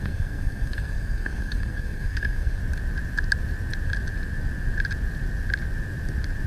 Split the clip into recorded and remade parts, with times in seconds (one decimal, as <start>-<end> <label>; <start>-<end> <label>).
0.0-2.6 remade; 2.6-6.5 recorded